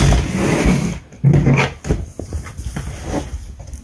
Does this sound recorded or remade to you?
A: recorded